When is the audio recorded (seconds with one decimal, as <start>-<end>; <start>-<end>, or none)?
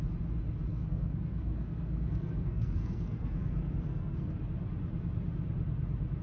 0.0-0.7; 4.4-6.2